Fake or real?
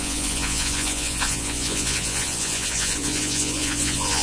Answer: fake